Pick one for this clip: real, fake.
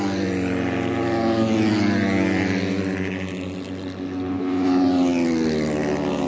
real